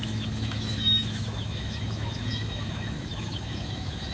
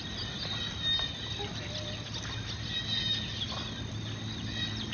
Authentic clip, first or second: second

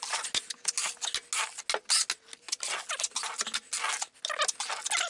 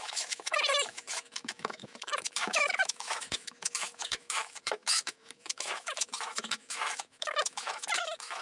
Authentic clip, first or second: first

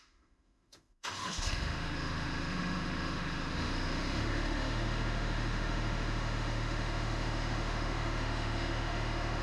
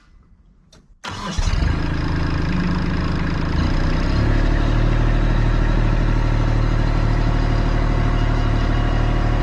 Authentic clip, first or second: second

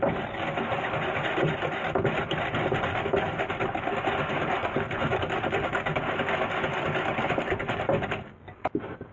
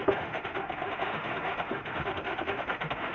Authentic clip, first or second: first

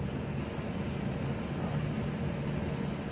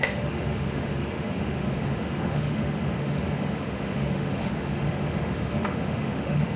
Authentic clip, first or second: first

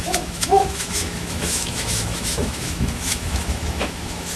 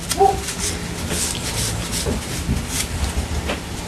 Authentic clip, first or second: second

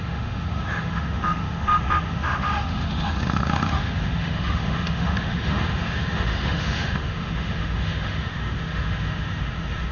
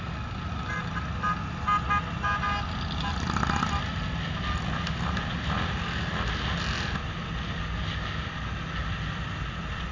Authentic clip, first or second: second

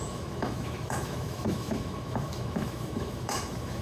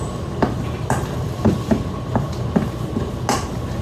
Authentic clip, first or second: second